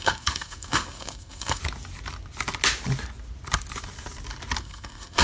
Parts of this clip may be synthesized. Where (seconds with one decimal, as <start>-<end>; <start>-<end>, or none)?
0.0-1.6; 4.6-5.2